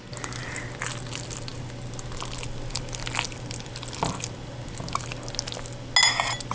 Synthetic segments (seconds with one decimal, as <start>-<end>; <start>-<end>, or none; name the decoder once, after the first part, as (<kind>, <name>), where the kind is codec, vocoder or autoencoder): none